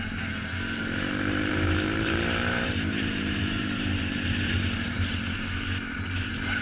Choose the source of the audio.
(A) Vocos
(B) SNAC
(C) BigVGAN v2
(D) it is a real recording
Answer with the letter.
C